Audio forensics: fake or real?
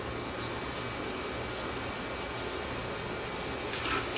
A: real